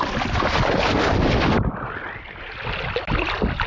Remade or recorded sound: recorded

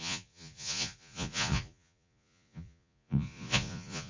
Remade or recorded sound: remade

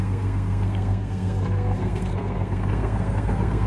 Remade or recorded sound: remade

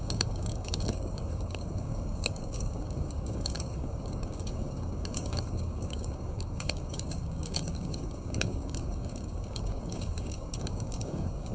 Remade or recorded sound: remade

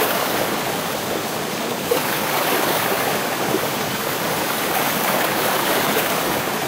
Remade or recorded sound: remade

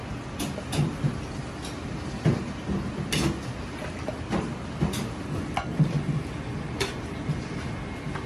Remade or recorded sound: recorded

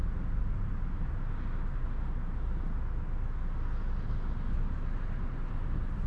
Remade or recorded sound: recorded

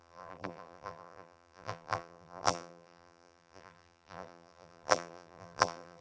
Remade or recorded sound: remade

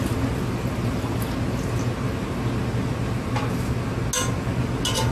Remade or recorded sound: recorded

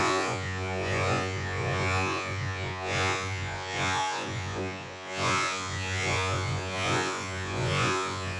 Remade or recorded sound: remade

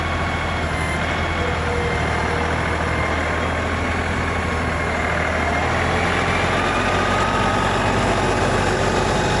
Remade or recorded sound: recorded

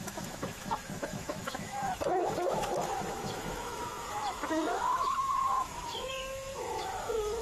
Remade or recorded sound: remade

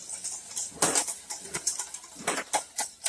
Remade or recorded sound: recorded